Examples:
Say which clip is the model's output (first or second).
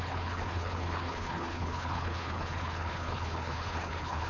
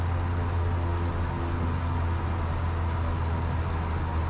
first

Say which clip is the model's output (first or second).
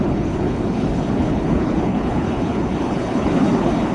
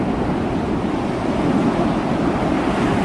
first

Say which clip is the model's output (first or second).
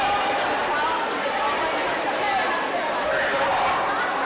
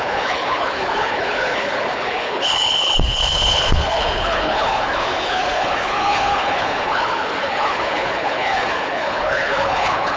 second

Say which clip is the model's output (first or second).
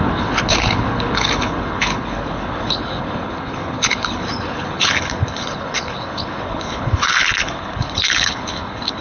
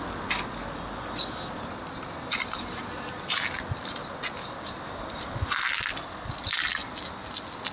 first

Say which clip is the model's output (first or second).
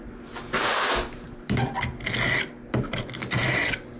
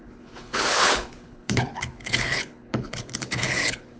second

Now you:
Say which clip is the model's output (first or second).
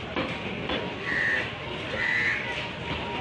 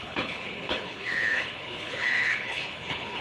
second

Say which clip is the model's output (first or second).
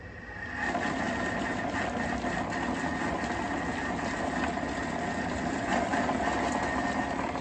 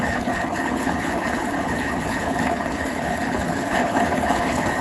second